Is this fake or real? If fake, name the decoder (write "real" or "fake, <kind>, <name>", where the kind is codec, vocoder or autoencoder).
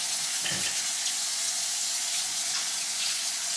fake, vocoder, Vocos